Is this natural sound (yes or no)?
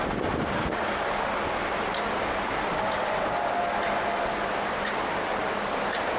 yes